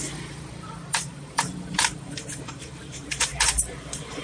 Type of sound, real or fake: fake